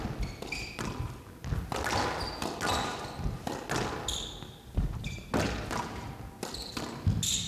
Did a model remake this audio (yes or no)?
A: no